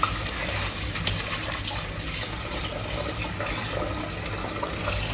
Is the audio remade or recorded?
recorded